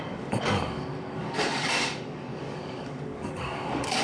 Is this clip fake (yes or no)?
yes